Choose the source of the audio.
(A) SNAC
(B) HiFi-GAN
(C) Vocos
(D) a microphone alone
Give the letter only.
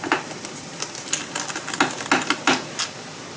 D